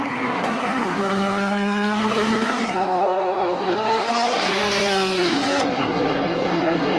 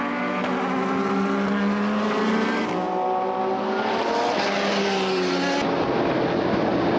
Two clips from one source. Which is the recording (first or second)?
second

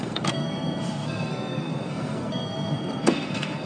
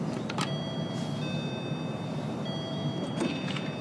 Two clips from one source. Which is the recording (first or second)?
second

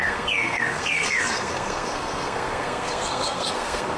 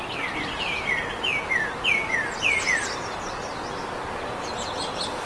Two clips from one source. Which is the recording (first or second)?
second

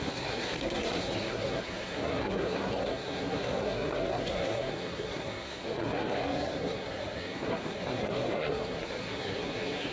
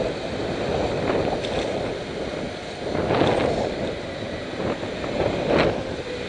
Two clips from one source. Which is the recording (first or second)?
second